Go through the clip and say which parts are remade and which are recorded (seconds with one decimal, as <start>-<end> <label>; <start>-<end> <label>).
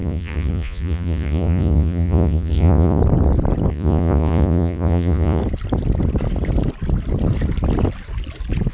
0.0-3.0 remade; 3.0-3.7 recorded; 3.7-5.4 remade; 5.4-8.7 recorded